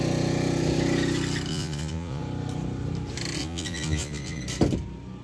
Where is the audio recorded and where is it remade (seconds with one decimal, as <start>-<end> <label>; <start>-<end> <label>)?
0.0-1.5 recorded; 1.5-2.2 remade; 2.2-3.4 recorded; 3.4-4.4 remade; 4.4-5.2 recorded